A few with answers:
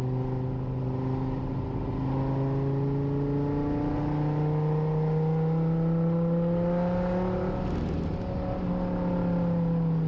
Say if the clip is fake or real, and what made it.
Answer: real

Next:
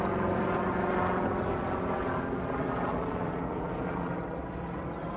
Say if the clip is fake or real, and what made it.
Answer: real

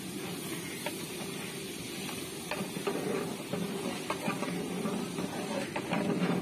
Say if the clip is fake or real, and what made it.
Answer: real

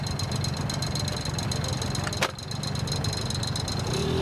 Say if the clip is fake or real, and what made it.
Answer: real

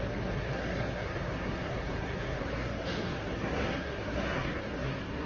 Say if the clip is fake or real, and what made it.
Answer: fake, codec, SNAC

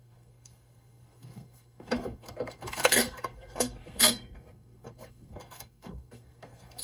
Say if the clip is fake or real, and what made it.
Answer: fake, codec, SNAC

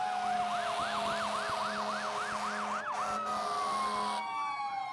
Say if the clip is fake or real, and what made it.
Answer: real